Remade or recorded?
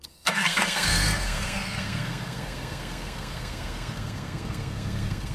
remade